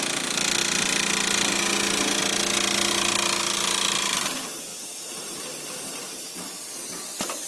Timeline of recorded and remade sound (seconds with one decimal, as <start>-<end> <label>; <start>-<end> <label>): 0.0-7.5 recorded